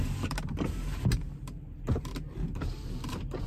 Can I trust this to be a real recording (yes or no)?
no